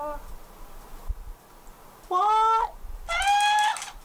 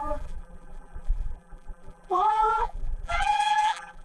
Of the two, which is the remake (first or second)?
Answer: second